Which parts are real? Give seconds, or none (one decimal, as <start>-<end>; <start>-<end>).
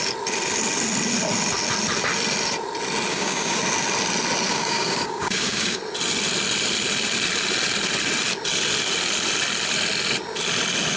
0.0-3.1; 3.6-4.5; 5.8-11.0